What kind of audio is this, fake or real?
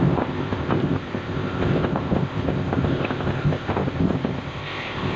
fake